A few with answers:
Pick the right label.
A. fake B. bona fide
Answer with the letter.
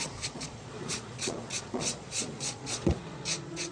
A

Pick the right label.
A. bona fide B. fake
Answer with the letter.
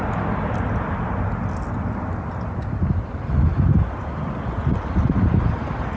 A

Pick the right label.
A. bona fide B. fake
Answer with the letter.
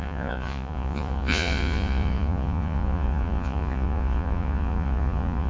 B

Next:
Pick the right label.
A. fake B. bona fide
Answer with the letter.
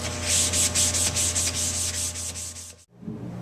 B